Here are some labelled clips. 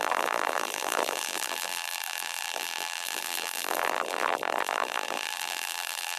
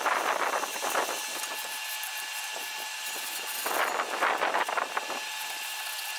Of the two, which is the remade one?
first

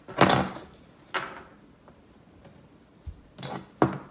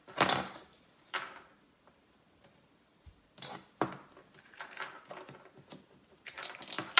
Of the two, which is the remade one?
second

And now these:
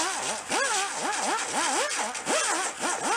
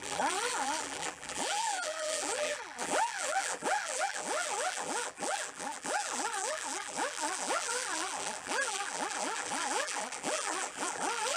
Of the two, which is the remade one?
second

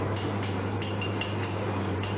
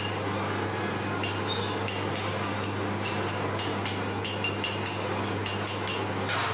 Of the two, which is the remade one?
first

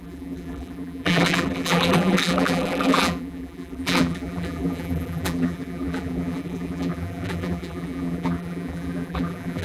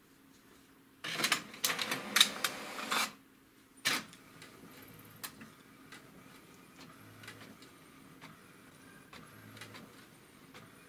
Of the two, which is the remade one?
first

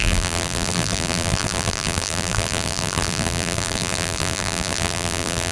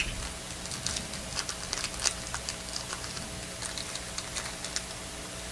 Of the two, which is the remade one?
first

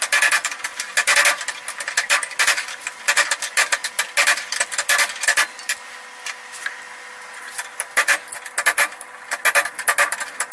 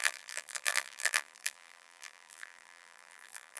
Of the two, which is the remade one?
second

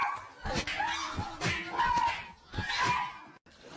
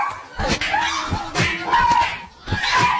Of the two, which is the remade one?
second